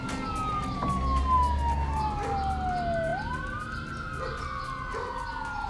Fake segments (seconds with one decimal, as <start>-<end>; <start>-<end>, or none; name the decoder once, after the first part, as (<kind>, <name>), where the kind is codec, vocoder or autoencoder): none